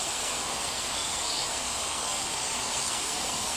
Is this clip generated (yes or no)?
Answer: yes